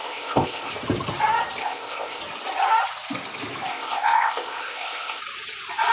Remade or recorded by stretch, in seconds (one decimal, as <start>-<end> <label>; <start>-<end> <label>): 0.0-0.7 remade; 0.7-1.6 recorded; 1.6-2.2 remade; 2.2-3.7 recorded; 3.7-5.2 remade; 5.2-5.9 recorded

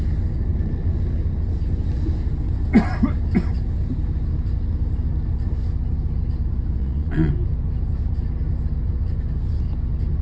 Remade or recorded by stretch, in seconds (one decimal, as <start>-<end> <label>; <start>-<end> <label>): 0.0-6.8 recorded; 6.8-7.3 remade; 7.3-10.2 recorded

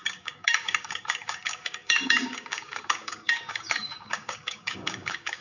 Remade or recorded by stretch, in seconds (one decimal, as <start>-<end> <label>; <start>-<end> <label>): 0.0-5.4 remade